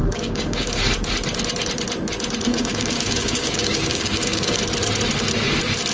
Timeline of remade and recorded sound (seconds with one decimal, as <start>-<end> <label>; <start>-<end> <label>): 0.0-0.7 remade; 0.7-2.5 recorded; 2.5-4.6 remade; 4.6-5.9 recorded